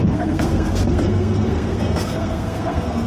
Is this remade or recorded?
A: remade